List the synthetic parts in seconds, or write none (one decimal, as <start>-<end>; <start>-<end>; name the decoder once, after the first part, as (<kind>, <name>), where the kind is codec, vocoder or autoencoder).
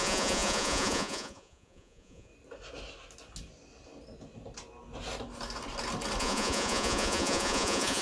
0.0-2.3 (vocoder, Vocos); 6.2-8.0